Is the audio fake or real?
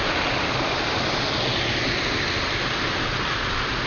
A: real